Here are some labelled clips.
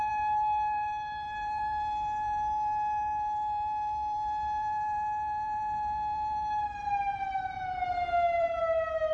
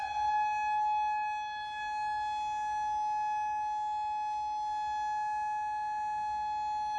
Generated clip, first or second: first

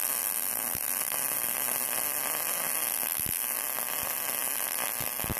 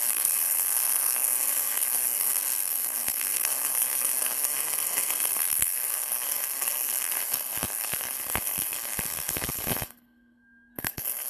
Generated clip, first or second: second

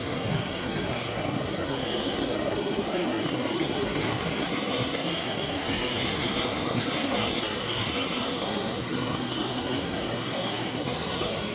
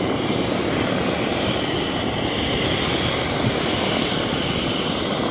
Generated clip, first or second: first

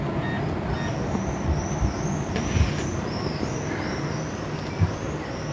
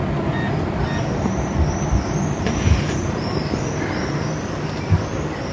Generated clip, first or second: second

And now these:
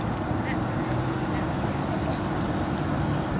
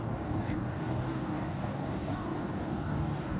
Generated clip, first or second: second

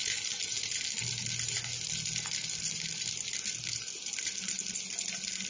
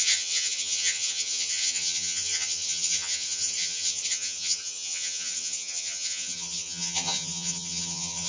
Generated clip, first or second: second